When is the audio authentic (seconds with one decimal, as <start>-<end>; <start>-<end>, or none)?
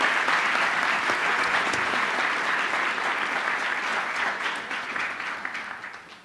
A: 0.0-1.2; 2.1-3.9; 5.2-6.2